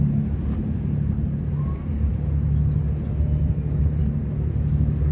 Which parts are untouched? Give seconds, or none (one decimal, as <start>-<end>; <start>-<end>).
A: 0.0-5.1